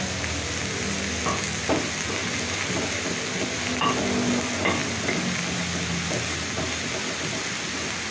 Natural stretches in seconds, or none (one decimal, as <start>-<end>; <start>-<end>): 0.0-8.1